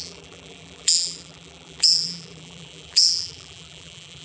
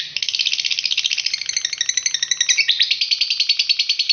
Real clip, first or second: second